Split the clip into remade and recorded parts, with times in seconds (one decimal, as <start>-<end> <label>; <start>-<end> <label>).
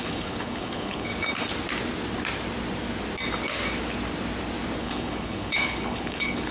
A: 0.0-1.1 remade; 1.1-4.8 recorded; 4.8-6.5 remade